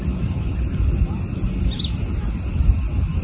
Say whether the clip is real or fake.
real